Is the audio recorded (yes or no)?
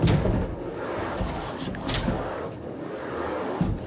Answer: no